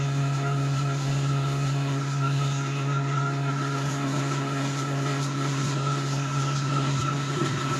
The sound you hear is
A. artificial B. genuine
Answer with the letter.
A